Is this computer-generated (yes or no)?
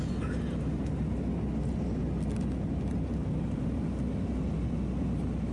no